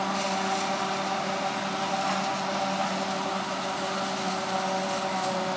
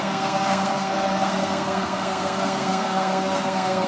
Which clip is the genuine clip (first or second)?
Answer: first